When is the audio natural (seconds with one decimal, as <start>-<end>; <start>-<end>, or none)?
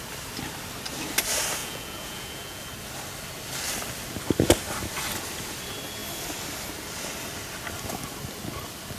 0.0-1.6; 2.6-9.0